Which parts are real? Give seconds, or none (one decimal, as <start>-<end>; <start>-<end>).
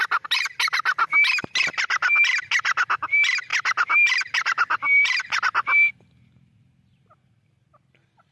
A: 0.0-8.3